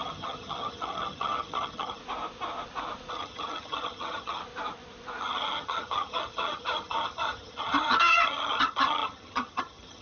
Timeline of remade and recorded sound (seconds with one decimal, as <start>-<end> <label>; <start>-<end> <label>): 0.0-2.0 remade; 2.0-3.1 recorded; 3.1-4.4 remade; 4.4-5.2 recorded; 5.2-10.0 remade